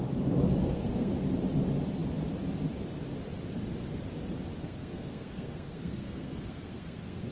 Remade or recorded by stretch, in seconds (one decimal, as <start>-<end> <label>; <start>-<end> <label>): 0.0-0.6 recorded; 0.6-1.1 remade; 1.1-4.6 recorded; 4.6-7.3 remade